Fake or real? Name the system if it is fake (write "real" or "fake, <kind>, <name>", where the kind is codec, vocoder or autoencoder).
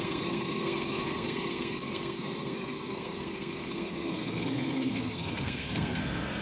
fake, codec, SNAC